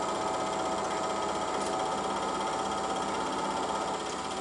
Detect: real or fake real